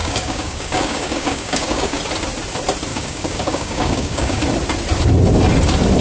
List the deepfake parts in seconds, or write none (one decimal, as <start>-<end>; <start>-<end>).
0.0-2.0; 2.9-4.4